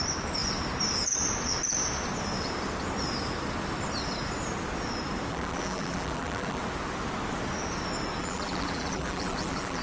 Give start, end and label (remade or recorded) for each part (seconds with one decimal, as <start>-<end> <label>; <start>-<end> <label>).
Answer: 0.0-5.3 recorded; 5.3-6.6 remade; 6.6-8.2 recorded; 8.2-9.8 remade